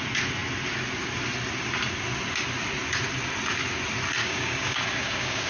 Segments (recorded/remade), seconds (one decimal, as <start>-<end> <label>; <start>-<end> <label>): 0.0-4.2 recorded; 4.2-5.5 remade